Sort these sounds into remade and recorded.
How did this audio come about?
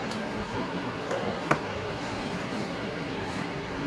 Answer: remade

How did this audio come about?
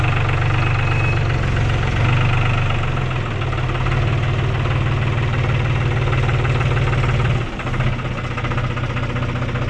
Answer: recorded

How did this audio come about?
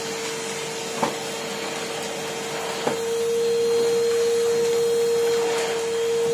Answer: recorded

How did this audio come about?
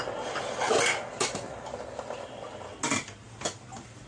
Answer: recorded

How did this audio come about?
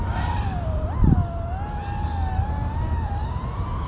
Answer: recorded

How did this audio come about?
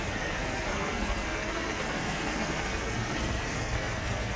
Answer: remade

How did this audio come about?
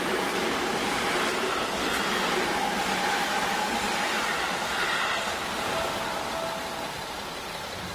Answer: recorded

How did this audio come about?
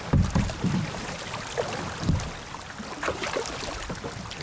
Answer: recorded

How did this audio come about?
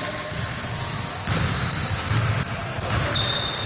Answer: recorded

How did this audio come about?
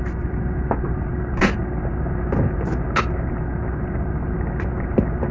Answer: recorded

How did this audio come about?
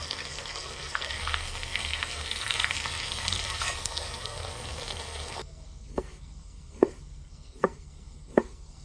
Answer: remade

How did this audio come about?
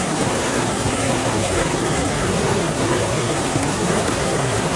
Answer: remade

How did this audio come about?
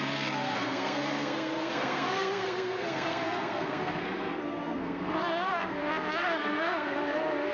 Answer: remade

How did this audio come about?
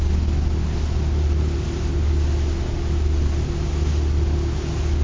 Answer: recorded